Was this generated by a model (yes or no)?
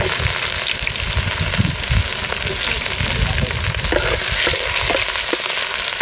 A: no